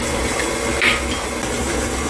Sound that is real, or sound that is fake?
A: real